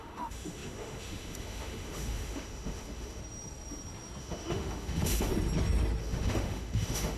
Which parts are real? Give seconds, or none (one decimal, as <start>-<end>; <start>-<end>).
3.2-4.2; 5.3-6.0